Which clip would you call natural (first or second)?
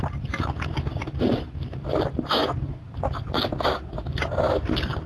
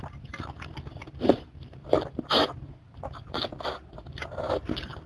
first